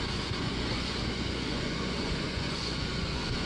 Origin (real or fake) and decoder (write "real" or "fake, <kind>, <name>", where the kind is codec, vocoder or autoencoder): fake, vocoder, Vocos